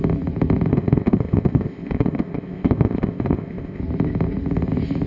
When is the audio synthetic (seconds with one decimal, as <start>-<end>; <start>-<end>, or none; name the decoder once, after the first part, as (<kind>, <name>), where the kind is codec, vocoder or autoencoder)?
0.7-3.8 (codec, ZipCodec)